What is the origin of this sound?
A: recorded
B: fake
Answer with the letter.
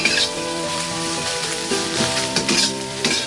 B